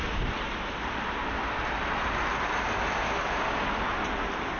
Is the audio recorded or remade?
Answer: recorded